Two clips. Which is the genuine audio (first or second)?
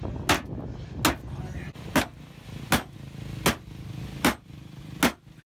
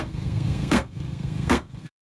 first